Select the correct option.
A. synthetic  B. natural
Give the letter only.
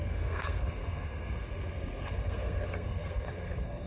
A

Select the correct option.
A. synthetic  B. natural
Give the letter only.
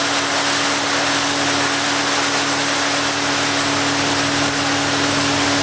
B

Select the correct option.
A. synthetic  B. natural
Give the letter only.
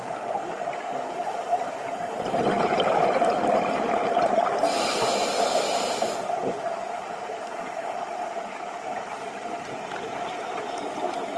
B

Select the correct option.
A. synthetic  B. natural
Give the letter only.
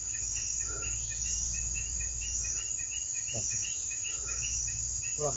A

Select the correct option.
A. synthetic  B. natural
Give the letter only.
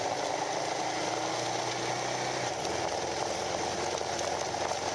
B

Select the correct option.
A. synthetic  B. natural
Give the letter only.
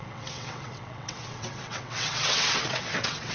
A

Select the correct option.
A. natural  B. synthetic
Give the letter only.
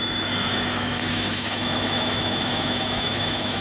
B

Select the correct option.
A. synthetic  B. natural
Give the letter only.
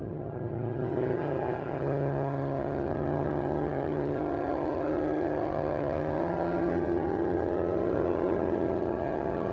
A